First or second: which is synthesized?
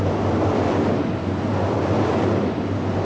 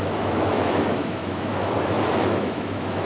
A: second